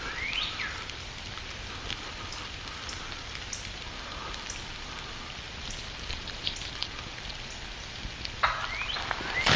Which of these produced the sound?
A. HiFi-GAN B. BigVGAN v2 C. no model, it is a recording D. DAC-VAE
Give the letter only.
B